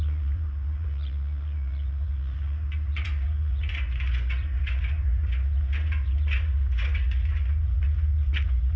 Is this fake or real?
fake